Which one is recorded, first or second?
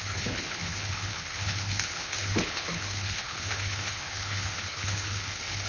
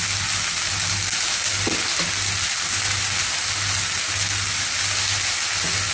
second